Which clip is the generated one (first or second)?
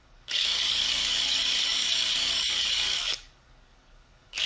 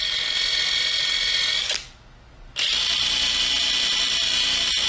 first